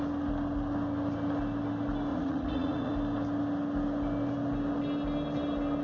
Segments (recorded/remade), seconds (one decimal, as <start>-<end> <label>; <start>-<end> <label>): 0.0-2.1 recorded; 2.1-2.9 remade; 2.9-5.8 recorded